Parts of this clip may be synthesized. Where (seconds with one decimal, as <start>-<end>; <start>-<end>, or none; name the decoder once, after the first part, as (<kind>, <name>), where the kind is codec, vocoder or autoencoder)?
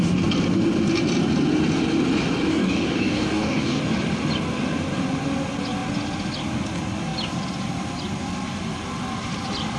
2.5-3.8 (codec, DAC)